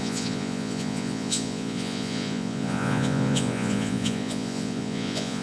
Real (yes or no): no